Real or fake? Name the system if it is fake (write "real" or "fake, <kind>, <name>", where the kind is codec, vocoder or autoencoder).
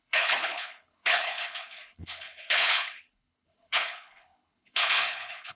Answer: fake, codec, HILCodec